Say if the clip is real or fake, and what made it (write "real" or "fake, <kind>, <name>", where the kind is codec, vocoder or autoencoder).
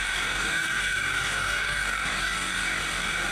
fake, codec, DAC